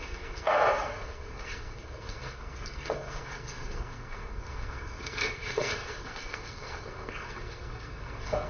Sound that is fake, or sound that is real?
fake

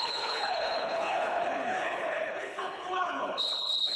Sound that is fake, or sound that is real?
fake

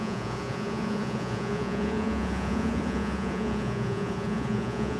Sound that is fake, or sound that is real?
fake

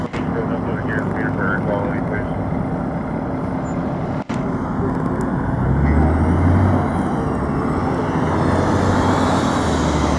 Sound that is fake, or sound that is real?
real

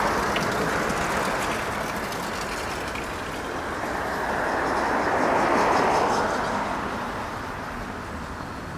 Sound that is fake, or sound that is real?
real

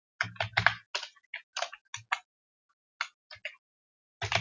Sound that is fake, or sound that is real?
real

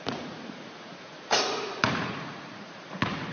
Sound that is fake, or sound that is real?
fake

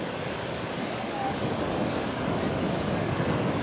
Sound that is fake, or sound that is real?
fake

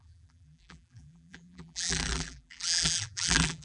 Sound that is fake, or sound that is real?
fake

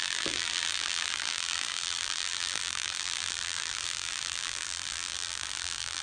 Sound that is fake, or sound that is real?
fake